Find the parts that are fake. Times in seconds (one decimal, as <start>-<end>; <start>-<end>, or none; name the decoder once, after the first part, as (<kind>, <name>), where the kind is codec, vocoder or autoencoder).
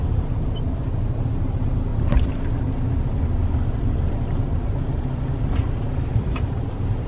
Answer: 0.0-1.9 (vocoder, BigVGAN v2); 6.1-7.1